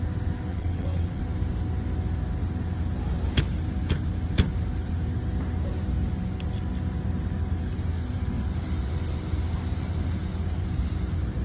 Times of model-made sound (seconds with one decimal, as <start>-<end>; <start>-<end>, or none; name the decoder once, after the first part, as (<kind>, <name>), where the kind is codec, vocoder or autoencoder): 0.5-1.2 (vocoder, WaveNeXt)